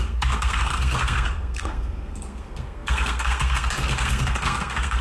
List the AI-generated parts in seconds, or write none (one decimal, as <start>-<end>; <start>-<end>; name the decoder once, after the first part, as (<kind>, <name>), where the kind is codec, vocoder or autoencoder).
0.0-5.0 (codec, SNAC)